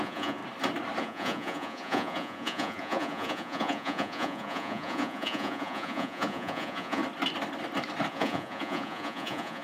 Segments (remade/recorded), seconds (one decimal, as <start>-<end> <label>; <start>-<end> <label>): 0.0-0.4 remade; 0.4-1.0 recorded; 1.0-7.0 remade; 7.0-8.1 recorded; 8.1-9.6 remade